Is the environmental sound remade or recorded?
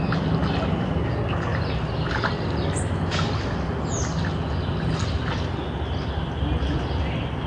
recorded